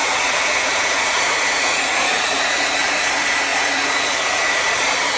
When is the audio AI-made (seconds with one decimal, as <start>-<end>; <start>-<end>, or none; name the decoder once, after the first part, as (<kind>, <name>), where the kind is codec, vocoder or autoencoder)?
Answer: 0.0-3.1 (vocoder, Vocos); 3.5-4.7